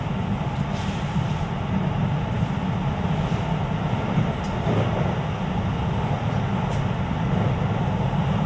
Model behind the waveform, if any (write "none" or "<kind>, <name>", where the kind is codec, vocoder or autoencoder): vocoder, BigVGAN v2